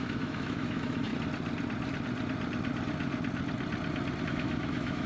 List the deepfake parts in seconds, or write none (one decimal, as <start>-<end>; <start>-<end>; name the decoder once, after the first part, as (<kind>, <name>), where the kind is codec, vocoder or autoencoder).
0.0-1.1 (autoencoder, DAC-VAE); 4.2-5.1

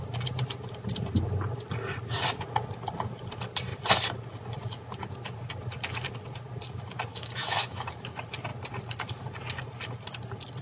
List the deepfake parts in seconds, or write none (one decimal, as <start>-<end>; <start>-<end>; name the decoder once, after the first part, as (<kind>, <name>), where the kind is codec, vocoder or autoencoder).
7.1-7.9 (autoencoder, DAC-VAE)